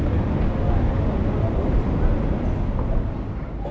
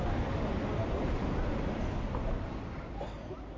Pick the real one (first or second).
first